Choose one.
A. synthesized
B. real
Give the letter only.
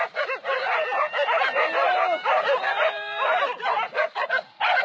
B